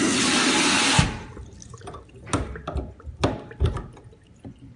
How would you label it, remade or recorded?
recorded